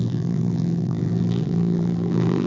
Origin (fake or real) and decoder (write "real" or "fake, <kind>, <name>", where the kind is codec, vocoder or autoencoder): fake, vocoder, BigVGAN v2